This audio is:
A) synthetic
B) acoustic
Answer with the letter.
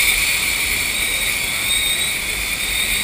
A